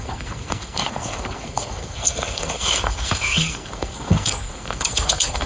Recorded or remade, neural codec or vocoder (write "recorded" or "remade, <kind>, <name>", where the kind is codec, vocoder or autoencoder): remade, codec, SNAC